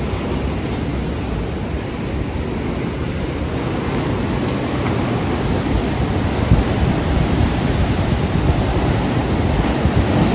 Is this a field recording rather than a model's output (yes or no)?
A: yes